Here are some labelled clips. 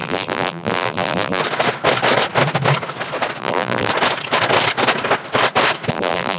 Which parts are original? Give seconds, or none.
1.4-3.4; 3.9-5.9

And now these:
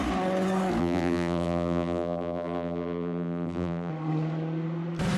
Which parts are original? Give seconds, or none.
0.0-0.8; 3.9-5.2

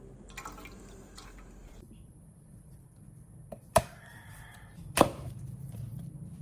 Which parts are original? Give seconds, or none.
0.0-1.6; 5.4-6.4

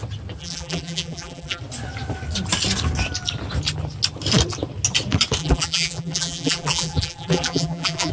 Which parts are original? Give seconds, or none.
0.0-0.4; 1.6-5.4

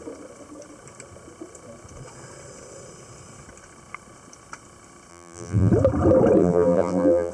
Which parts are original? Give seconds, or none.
0.0-5.1; 5.7-6.4

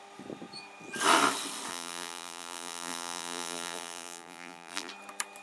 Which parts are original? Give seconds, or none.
0.0-1.7; 4.9-5.4

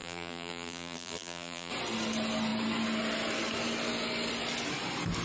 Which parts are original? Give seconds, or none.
1.7-5.2